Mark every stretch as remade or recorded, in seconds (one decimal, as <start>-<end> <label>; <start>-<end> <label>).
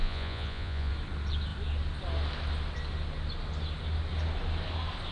0.0-0.9 remade; 0.9-5.1 recorded